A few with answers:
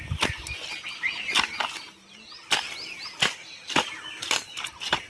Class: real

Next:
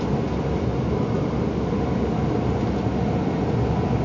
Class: real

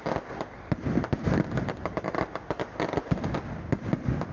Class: real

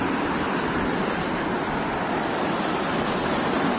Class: real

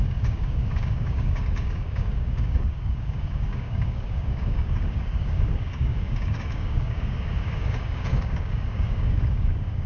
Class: fake